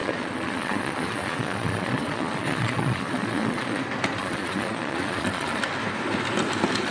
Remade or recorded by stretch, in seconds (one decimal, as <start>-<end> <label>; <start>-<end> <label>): 0.0-3.8 remade; 3.8-4.2 recorded; 4.2-5.6 remade; 5.6-6.9 recorded